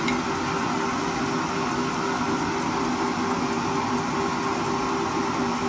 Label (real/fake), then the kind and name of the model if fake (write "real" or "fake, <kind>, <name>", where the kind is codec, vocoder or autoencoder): real